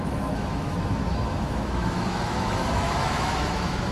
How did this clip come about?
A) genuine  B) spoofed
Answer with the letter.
B